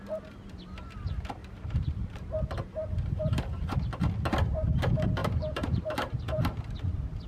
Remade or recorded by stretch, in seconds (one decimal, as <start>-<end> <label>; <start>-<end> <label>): 0.0-1.4 recorded; 1.4-3.5 remade; 3.5-5.2 recorded; 5.2-6.6 remade; 6.6-7.3 recorded